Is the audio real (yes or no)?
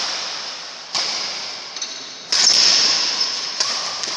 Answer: yes